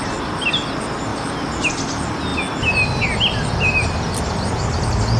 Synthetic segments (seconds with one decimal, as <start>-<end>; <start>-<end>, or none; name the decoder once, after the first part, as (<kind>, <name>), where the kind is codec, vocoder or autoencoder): 1.1-1.7 (vocoder, BigVGAN v2)